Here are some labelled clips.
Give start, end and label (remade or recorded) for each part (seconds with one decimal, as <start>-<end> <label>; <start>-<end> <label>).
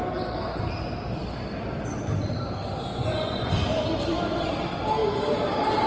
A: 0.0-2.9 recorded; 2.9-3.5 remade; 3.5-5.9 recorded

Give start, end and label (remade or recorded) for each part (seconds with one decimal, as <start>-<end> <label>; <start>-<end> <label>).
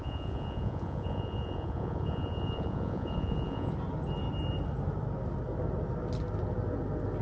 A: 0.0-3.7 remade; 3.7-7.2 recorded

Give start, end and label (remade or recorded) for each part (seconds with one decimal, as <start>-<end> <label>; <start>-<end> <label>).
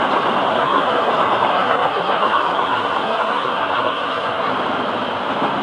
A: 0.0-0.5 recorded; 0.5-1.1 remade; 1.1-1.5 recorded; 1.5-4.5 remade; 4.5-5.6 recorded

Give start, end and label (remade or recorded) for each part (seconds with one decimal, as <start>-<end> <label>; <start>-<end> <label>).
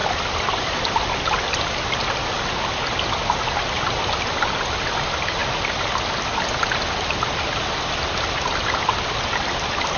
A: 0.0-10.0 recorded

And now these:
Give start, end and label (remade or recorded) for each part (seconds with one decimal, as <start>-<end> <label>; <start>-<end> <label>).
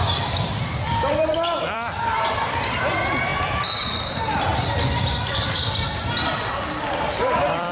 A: 0.0-7.7 remade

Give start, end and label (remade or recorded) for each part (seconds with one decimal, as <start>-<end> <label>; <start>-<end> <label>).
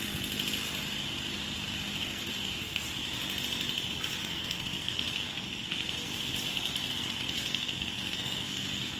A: 0.0-2.0 recorded; 2.0-2.8 remade; 2.8-4.2 recorded; 4.2-6.3 remade; 6.3-6.9 recorded; 6.9-9.0 remade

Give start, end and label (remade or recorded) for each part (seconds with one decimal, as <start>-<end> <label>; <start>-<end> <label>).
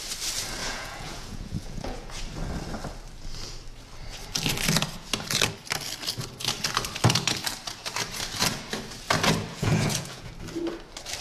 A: 0.0-0.6 recorded; 0.6-2.2 remade; 2.2-9.5 recorded; 9.5-10.3 remade; 10.3-11.2 recorded